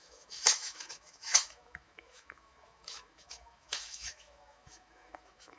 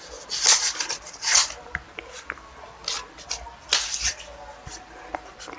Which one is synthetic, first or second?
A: first